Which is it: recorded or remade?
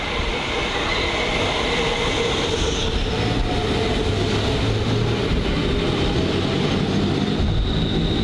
recorded